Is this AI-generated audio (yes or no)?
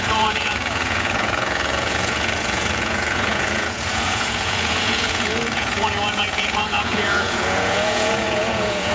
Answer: yes